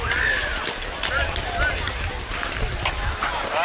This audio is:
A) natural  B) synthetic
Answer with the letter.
A